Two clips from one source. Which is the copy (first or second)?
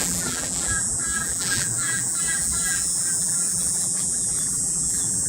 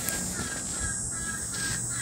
first